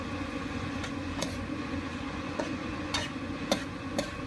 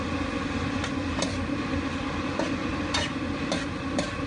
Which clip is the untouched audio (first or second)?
second